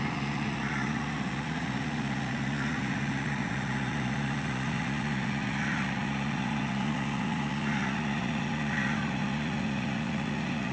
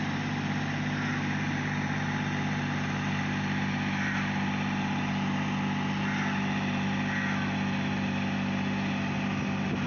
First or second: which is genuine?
second